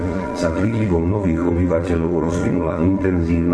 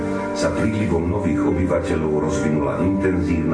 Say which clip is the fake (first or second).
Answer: first